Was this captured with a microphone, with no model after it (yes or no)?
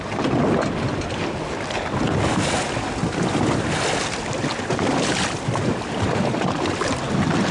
yes